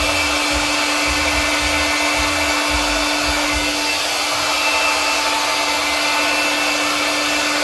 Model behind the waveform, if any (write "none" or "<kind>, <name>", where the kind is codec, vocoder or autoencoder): none